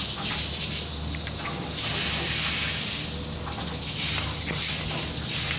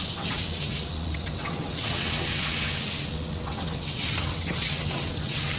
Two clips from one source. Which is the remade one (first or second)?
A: second